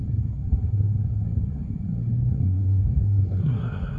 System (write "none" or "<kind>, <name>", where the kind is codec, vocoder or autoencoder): codec, SNAC